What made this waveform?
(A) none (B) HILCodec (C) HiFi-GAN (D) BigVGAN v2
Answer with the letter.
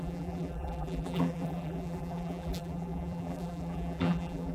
D